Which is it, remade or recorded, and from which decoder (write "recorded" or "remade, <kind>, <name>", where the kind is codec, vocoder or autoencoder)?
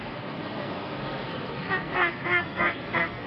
remade, codec, SNAC